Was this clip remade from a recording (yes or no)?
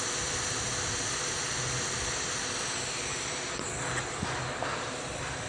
no